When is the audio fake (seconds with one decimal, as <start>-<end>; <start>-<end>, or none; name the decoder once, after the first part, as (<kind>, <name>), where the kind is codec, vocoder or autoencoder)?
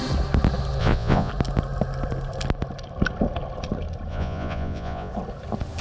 0.8-1.3 (vocoder, Vocos); 4.1-5.1